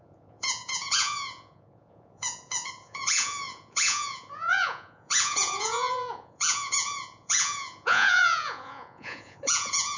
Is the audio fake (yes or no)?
yes